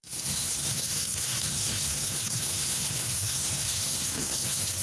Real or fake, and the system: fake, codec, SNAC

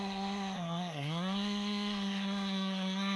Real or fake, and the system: fake, codec, SNAC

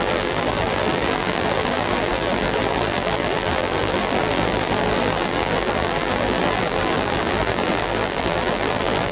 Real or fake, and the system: fake, vocoder, BigVGAN v2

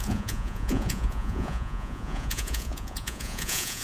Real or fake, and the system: fake, vocoder, Vocos